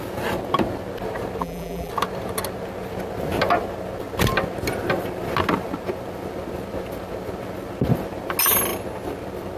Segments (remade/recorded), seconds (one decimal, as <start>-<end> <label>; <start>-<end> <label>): 0.0-1.4 recorded; 1.4-1.9 remade; 1.9-9.6 recorded